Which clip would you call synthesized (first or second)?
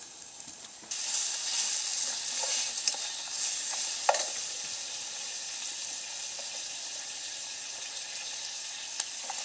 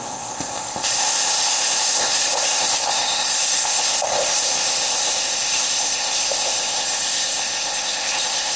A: second